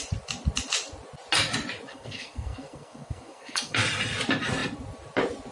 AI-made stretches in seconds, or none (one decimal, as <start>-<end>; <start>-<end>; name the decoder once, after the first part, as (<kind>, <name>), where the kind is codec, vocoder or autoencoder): 1.9-3.8 (codec, SNAC)

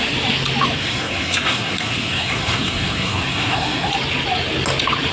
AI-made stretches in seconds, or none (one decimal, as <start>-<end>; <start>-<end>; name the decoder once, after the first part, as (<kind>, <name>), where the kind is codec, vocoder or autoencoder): 0.8-3.9 (codec, SNAC)

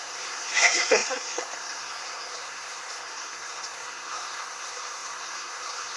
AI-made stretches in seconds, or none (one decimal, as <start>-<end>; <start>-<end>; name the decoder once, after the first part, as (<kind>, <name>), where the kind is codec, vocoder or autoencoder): 0.0-6.0 (codec, SNAC)

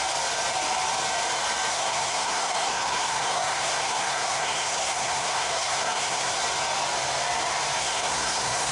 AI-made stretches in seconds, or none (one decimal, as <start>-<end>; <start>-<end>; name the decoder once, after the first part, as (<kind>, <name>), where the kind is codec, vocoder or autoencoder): 1.7-6.4 (codec, SNAC); 7.8-8.7

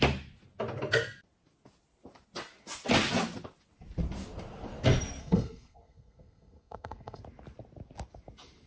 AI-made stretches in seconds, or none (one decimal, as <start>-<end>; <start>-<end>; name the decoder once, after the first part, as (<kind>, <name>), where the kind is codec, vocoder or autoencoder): 5.2-7.2 (codec, SNAC)